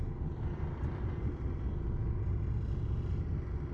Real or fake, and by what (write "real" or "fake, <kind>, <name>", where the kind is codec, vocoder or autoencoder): real